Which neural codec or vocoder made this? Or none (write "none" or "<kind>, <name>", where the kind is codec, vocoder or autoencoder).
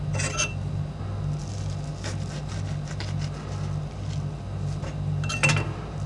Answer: none